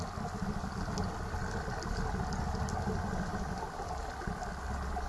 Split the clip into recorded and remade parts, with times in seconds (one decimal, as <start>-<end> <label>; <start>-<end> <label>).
0.0-5.1 recorded